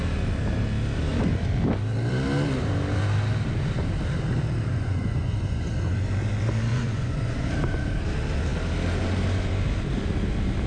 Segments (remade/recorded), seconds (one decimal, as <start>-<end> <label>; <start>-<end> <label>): 0.0-4.7 recorded; 4.7-5.7 remade; 5.7-6.7 recorded; 6.7-7.5 remade; 7.5-10.7 recorded